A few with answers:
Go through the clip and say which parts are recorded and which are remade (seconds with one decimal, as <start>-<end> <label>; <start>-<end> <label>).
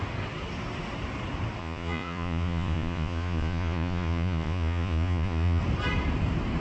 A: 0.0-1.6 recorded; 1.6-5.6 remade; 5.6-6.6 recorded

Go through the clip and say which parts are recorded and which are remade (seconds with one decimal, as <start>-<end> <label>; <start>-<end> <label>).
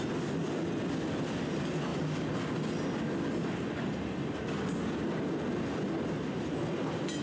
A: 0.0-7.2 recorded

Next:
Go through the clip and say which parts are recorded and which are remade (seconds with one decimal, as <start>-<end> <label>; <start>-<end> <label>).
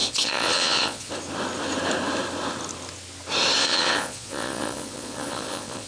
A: 0.0-1.1 remade; 1.1-3.6 recorded; 3.6-5.9 remade